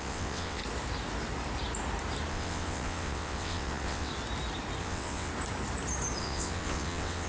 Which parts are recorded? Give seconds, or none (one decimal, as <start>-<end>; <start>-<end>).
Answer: 0.6-2.3; 4.1-4.8; 5.3-6.2

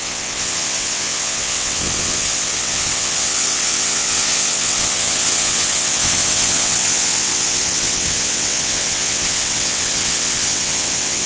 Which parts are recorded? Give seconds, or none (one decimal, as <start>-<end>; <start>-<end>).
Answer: none